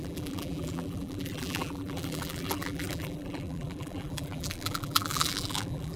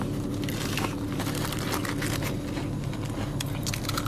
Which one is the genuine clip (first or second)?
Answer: second